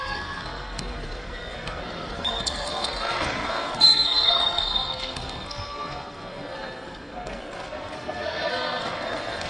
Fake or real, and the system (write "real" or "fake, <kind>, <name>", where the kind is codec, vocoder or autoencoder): fake, codec, SNAC